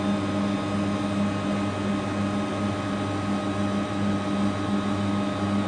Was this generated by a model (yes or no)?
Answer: no